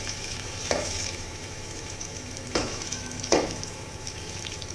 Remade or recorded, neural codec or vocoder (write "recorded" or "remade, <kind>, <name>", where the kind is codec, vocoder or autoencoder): remade, autoencoder, DAC-VAE